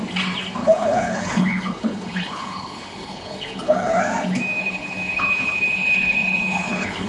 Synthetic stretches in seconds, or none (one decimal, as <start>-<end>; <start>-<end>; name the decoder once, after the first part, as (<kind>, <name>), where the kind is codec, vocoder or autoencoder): 0.6-4.0 (codec, HILCodec); 4.6-7.1